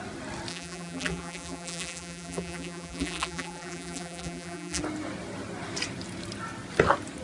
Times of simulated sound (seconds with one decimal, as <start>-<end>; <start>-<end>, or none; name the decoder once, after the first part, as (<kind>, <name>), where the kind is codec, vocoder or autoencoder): 0.5-4.8 (vocoder, BigVGAN v2)